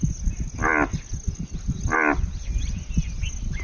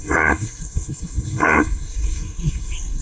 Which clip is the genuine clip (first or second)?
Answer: first